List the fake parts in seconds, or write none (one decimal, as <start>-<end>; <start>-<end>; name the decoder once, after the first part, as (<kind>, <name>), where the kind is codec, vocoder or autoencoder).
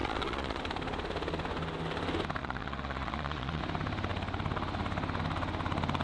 0.0-0.6 (vocoder, Vocos); 2.4-3.6